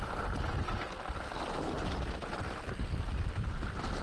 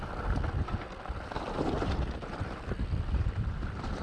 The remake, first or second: second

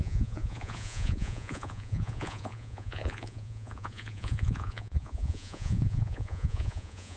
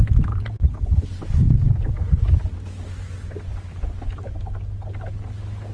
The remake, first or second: first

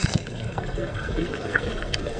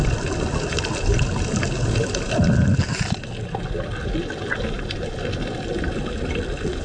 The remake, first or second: first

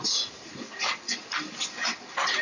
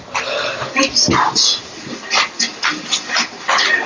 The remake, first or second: first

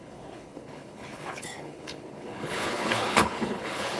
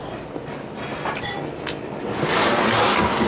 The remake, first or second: first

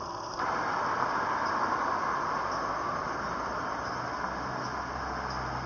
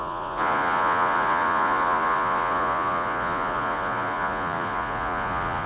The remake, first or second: second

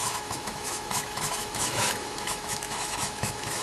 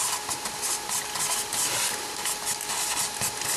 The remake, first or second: first